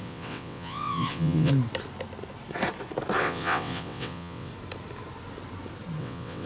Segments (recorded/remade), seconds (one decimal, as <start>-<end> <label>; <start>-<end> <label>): 0.0-1.5 remade; 1.5-3.2 recorded; 3.2-4.5 remade; 4.5-6.0 recorded; 6.0-6.5 remade